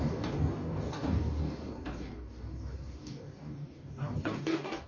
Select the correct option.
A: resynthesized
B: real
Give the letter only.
A